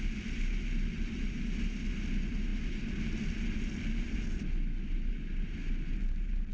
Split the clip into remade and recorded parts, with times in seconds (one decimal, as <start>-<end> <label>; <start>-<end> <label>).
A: 0.0-6.5 recorded